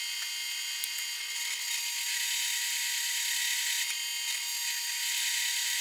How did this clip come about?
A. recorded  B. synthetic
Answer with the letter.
A